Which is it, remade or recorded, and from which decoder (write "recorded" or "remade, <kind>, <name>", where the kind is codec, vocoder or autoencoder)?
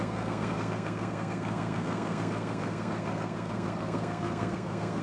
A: remade, codec, SNAC